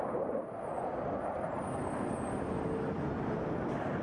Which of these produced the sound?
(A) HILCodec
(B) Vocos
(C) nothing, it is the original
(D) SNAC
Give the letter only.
C